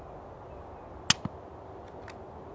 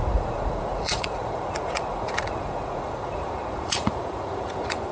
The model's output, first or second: second